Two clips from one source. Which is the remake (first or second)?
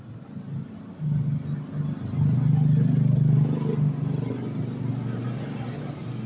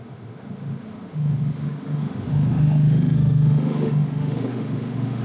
second